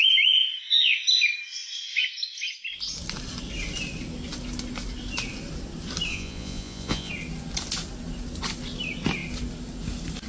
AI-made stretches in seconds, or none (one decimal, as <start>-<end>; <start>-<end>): 6.1-7.1